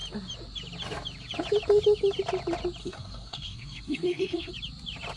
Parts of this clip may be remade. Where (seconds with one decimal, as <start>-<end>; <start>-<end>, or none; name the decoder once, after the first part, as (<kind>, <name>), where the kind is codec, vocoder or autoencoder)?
2.8-4.5 (codec, SNAC)